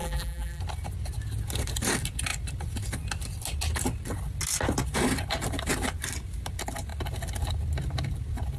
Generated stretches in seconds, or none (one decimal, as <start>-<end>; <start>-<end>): 0.0-0.6